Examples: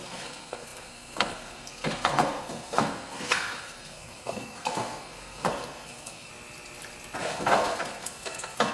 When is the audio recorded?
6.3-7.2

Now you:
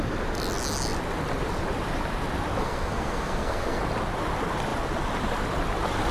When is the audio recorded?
0.0-2.6; 3.8-6.1

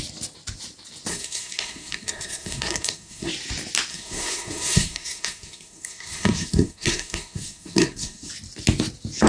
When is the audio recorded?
0.0-1.1; 3.3-3.9; 8.3-9.3

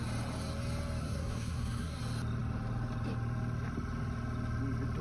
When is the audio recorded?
0.0-1.0; 2.0-5.0

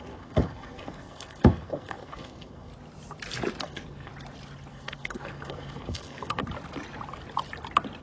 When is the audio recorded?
2.7-3.6; 4.1-4.7; 6.4-8.0